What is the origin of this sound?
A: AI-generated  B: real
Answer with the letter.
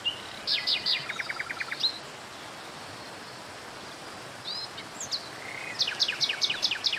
B